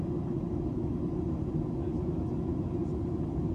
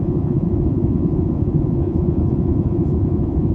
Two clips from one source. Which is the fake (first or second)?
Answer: second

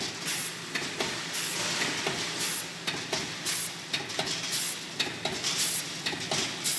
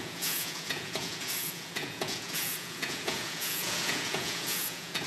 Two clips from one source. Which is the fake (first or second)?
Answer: second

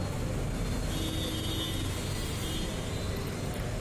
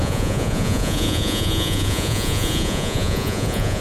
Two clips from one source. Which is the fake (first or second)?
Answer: second